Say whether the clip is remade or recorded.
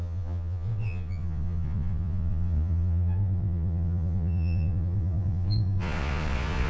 remade